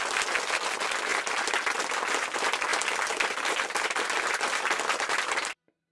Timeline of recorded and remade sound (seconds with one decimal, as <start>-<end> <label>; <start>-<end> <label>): 0.0-5.9 recorded